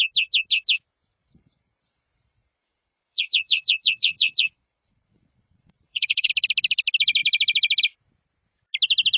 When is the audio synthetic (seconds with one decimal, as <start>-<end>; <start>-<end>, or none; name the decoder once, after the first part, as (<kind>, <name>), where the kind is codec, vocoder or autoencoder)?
1.2-6.3 (vocoder, Vocos)